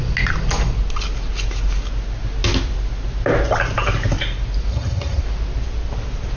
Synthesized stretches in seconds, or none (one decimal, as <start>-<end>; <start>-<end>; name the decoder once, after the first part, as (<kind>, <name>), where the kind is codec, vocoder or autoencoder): 4.7-5.2 (vocoder, HiFi-GAN)